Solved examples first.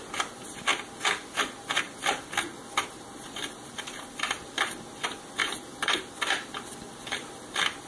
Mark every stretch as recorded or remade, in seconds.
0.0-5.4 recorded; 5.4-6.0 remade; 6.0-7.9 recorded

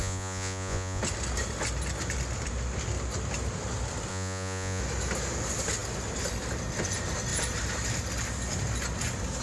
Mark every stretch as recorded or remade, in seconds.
0.0-1.0 remade; 1.0-4.1 recorded; 4.1-4.8 remade; 4.8-9.4 recorded

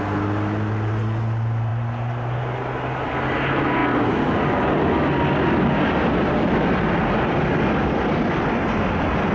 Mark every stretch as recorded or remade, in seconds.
0.0-9.3 recorded

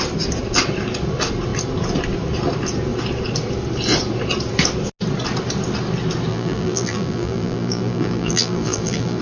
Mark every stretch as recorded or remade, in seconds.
0.0-6.3 recorded; 6.3-9.2 remade

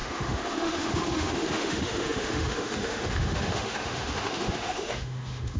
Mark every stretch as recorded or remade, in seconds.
0.0-5.6 remade

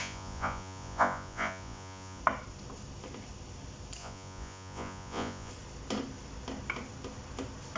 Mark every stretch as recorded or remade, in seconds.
0.0-2.2 remade; 2.2-4.0 recorded; 4.0-5.5 remade; 5.5-7.8 recorded

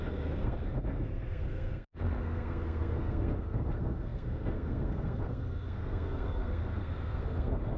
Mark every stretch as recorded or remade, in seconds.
0.0-7.8 remade

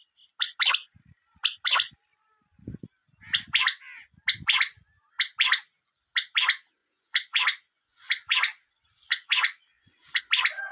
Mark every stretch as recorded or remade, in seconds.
0.0-6.8 recorded; 6.8-10.2 remade; 10.2-10.7 recorded